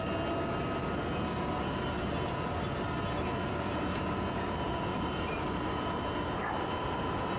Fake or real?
real